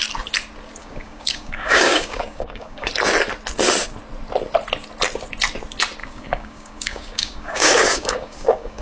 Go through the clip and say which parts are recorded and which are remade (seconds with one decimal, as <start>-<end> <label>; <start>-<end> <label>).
0.0-0.8 recorded; 0.8-2.9 remade; 2.9-6.0 recorded; 6.0-8.8 remade